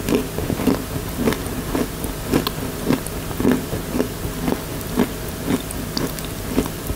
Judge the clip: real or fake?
real